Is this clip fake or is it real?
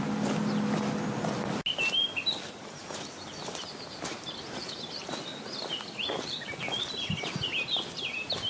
real